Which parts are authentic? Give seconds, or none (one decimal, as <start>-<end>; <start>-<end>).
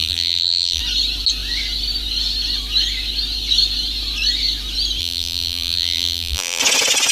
0.8-5.0; 6.6-7.1